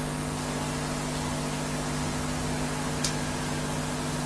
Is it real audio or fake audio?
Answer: real